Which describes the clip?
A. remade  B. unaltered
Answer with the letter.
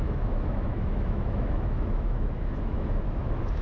A